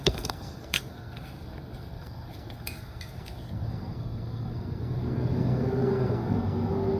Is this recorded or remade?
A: remade